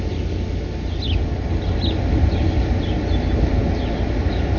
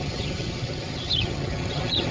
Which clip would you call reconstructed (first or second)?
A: second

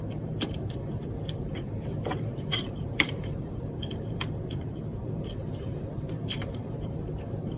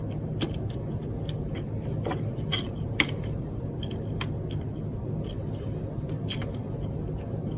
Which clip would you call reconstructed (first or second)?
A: first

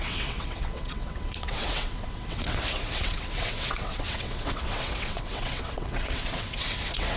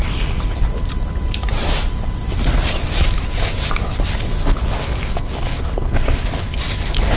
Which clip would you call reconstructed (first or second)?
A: first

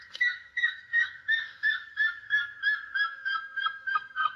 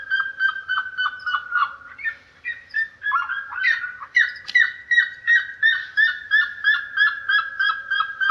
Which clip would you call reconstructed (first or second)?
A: first